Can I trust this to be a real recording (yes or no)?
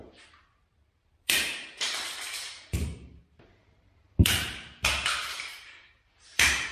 no